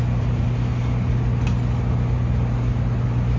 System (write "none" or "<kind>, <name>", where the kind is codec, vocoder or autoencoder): none